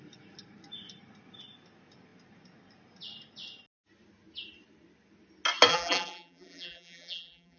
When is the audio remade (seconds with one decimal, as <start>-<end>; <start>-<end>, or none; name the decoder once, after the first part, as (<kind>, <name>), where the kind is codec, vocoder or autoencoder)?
5.7-7.6 (vocoder, BigVGAN v2)